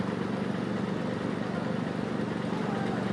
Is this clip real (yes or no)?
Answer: yes